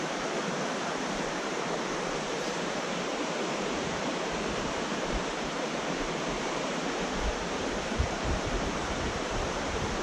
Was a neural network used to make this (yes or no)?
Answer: yes